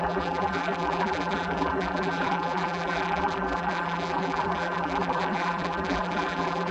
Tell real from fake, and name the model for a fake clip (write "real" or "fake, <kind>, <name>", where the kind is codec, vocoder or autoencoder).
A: fake, vocoder, BigVGAN v2